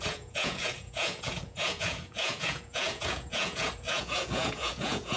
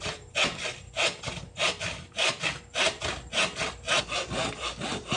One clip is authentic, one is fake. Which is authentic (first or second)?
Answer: second